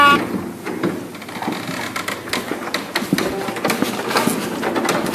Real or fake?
real